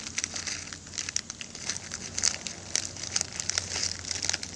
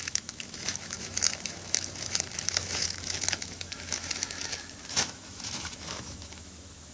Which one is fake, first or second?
second